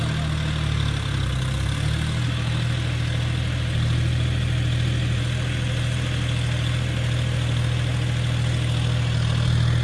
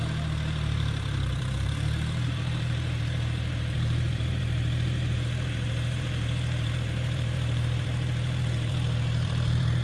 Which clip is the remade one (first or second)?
second